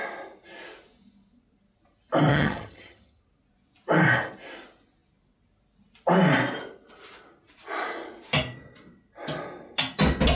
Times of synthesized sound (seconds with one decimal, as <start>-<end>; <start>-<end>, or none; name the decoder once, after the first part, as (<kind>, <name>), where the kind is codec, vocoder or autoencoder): 2.3-3.2 (vocoder, HiFi-GAN)